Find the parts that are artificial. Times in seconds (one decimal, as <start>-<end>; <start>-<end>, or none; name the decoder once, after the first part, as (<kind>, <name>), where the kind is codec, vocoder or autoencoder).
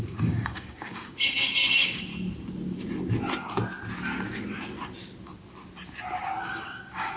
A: 0.0-2.1 (codec, DAC); 6.4-7.2